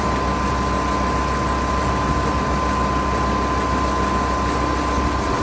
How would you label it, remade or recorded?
recorded